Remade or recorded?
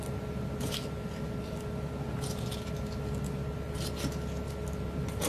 recorded